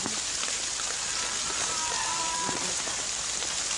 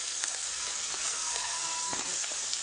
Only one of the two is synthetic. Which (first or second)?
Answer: second